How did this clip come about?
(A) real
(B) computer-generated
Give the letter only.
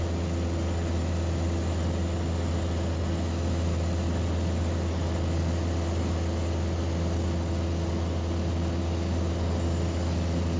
A